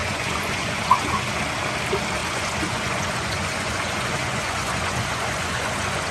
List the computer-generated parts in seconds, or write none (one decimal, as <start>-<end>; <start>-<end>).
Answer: 0.0-1.4; 2.2-6.1